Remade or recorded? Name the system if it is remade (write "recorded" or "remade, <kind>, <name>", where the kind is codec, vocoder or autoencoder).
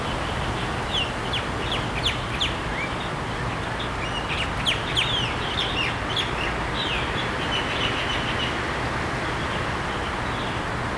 recorded